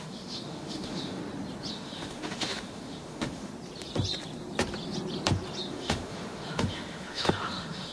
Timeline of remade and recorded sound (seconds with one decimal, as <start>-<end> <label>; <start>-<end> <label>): 0.0-1.2 remade; 1.2-1.7 recorded; 1.7-3.5 remade; 3.5-5.7 recorded; 5.7-7.9 remade